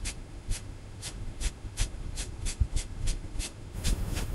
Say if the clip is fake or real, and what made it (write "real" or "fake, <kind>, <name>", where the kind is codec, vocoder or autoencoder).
fake, autoencoder, DAC-VAE